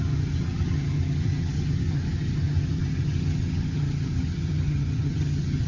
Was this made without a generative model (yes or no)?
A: no